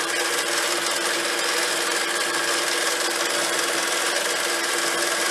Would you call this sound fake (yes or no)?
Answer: no